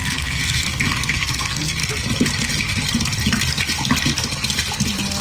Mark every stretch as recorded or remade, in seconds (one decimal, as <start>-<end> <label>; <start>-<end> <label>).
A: 0.0-1.8 remade; 1.8-5.2 recorded